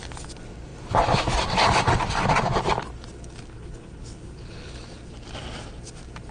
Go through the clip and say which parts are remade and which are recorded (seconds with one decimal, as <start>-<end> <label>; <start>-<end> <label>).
0.0-3.5 recorded; 3.5-4.7 remade; 4.7-6.3 recorded